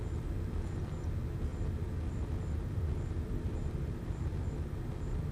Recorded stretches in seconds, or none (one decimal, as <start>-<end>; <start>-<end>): 0.0-1.5; 4.7-5.3